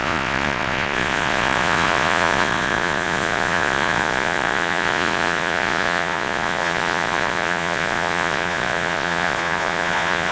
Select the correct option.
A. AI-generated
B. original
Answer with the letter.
A